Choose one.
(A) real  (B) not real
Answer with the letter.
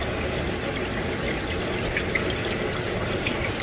A